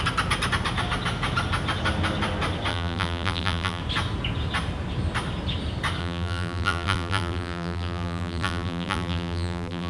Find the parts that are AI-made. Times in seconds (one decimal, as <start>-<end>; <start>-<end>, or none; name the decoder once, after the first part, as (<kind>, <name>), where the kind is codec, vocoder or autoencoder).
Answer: 2.7-3.8 (vocoder, BigVGAN v2); 6.0-9.9